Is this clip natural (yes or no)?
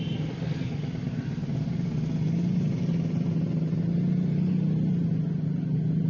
yes